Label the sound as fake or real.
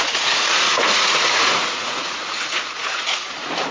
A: fake